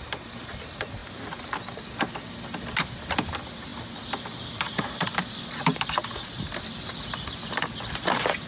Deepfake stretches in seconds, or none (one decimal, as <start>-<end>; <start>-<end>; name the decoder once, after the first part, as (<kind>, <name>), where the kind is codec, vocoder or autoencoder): none